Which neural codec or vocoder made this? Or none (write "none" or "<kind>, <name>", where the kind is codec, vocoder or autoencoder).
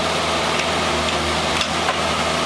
none